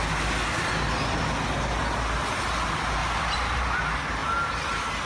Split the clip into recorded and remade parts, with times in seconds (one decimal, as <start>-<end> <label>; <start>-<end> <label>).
0.0-3.0 recorded; 3.0-3.8 remade; 3.8-5.1 recorded